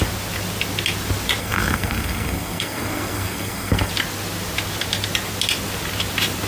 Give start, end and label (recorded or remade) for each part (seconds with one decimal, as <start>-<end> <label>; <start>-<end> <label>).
0.0-1.4 recorded; 1.4-3.9 remade; 3.9-6.5 recorded